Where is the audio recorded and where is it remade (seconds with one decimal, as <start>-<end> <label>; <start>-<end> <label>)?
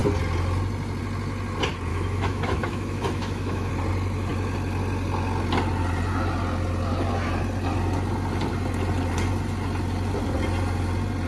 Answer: 0.0-1.9 recorded; 1.9-3.7 remade; 3.7-11.3 recorded